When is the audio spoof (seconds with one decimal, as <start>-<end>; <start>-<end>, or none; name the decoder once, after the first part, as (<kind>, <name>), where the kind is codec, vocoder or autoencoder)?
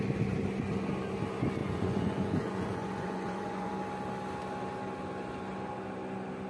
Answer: 1.6-3.7 (vocoder, Vocos)